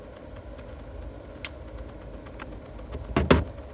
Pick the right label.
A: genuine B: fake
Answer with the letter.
A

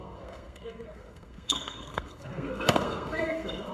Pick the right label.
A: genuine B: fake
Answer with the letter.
B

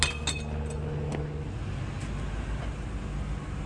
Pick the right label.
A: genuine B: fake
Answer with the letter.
A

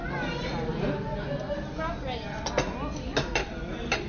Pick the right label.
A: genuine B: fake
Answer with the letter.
A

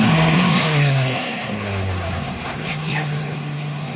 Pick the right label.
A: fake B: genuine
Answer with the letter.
A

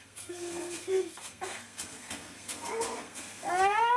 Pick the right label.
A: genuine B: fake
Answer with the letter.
B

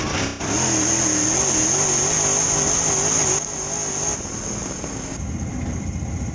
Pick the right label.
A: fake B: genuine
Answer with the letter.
B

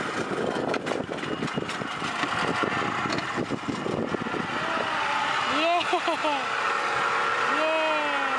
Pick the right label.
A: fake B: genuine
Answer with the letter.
B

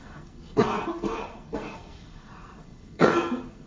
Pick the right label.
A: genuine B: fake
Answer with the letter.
B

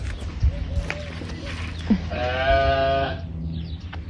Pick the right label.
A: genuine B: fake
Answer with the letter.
A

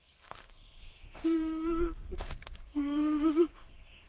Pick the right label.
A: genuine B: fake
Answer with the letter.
B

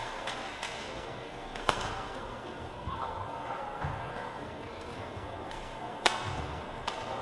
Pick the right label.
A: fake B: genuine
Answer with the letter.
A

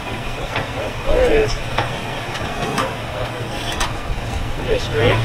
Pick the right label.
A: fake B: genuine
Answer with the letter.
A